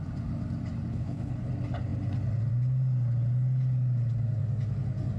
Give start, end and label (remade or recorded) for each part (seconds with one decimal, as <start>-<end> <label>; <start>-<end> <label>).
0.0-0.9 recorded; 0.9-1.5 remade; 1.5-5.2 recorded